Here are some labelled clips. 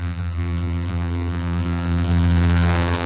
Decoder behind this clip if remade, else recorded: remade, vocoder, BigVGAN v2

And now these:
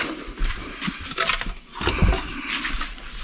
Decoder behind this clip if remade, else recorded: recorded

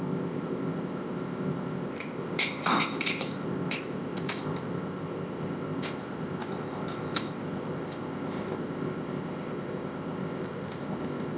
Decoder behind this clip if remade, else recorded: remade, codec, ZipCodec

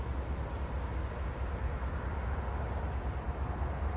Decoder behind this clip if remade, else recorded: recorded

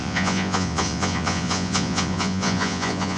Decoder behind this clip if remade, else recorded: remade, vocoder, Vocos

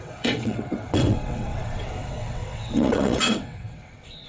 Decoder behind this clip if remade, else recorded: remade, vocoder, WaveNeXt